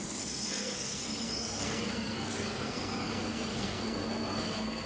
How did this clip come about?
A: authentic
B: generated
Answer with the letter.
B